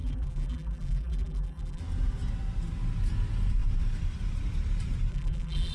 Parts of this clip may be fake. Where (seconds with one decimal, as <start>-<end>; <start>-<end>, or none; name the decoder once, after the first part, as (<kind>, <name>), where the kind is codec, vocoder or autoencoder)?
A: 0.0-1.8 (vocoder, BigVGAN v2); 5.1-5.7